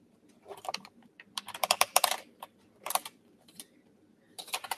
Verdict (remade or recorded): remade